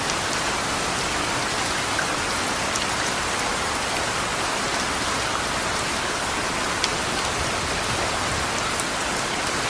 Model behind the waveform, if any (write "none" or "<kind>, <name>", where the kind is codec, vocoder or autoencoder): none